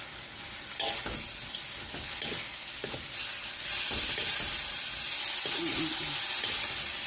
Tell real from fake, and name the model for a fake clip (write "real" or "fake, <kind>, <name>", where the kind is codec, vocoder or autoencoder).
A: real